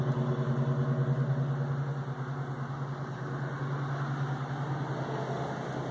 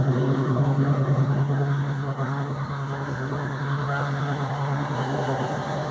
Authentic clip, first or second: first